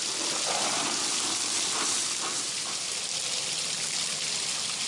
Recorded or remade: recorded